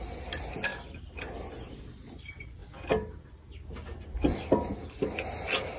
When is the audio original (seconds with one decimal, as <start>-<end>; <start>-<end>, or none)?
0.0-5.8